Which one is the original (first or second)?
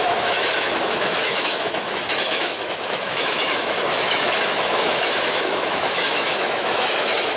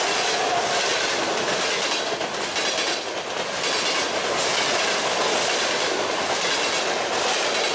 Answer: second